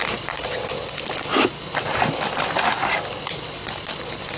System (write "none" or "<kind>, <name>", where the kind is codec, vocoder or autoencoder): none